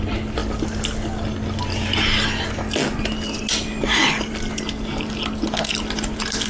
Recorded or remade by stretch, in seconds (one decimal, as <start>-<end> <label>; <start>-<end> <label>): 0.0-6.5 recorded